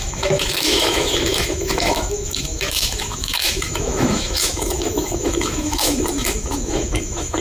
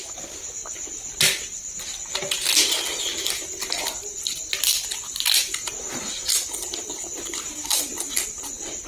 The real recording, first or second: second